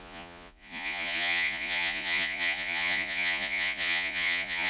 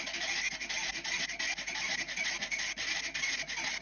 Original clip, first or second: second